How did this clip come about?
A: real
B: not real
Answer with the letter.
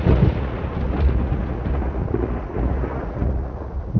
B